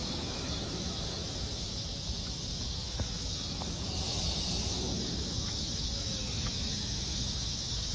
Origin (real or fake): fake